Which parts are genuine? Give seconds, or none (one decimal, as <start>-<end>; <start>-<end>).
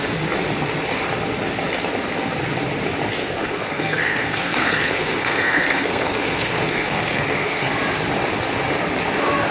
0.0-3.2; 7.7-9.5